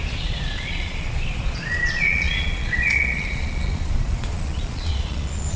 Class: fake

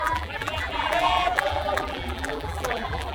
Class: fake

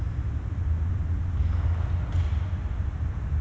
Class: real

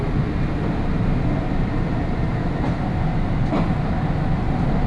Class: real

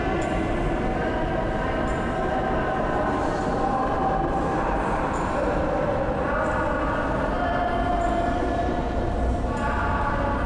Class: real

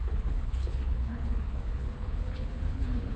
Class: fake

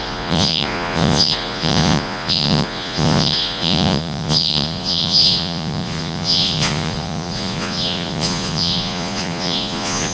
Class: fake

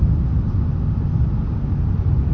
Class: real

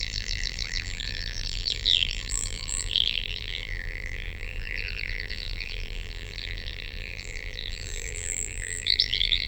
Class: fake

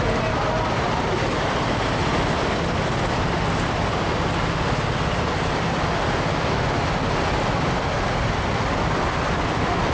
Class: real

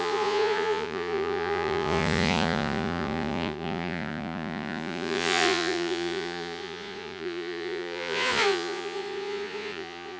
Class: fake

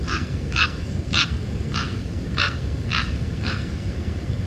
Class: fake